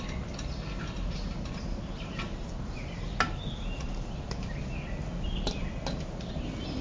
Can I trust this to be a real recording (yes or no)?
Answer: yes